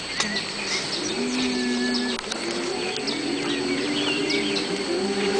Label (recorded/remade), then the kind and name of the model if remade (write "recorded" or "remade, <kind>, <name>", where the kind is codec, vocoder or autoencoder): recorded